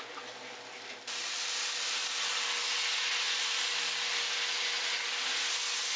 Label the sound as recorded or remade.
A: recorded